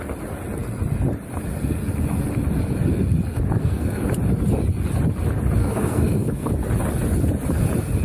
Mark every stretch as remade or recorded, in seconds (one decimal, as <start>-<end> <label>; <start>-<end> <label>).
0.0-3.6 recorded; 3.6-4.1 remade; 4.1-5.6 recorded; 5.6-6.5 remade; 6.5-8.0 recorded